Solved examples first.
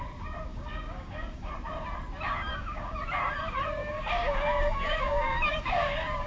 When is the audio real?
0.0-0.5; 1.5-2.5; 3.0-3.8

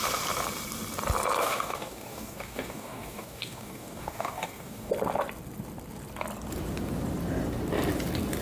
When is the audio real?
0.0-1.4; 4.9-8.4

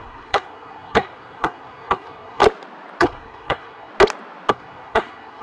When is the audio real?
2.4-3.0; 3.9-4.5

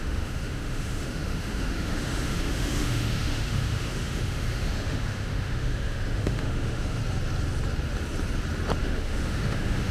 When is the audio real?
7.0-8.8